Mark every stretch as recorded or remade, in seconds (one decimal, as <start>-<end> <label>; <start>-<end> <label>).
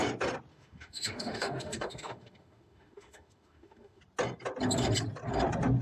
0.0-0.5 recorded; 0.5-4.0 remade; 4.0-5.8 recorded